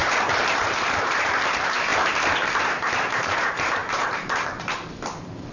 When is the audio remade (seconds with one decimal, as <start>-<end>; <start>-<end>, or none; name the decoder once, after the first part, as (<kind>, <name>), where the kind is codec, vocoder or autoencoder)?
0.6-1.9 (vocoder, BigVGAN v2); 2.6-5.5